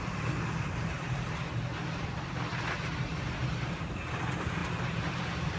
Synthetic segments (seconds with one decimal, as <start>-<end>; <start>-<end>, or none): 0.0-2.5; 3.1-5.6